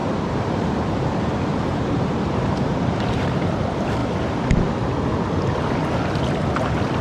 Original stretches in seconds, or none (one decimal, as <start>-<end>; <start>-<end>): 4.0-7.0